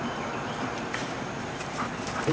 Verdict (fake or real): fake